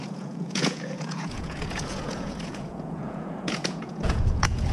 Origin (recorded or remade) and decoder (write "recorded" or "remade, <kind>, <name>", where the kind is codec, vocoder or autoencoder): remade, vocoder, Vocos